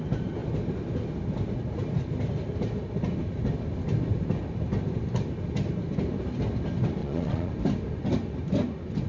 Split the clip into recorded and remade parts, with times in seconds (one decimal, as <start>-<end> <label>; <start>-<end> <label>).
0.0-7.0 recorded; 7.0-7.5 remade; 7.5-9.1 recorded